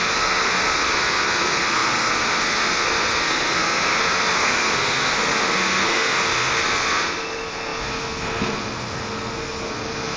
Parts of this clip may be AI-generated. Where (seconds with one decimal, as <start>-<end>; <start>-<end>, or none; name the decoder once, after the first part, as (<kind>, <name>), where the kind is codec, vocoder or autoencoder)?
0.0-10.2 (codec, SNAC)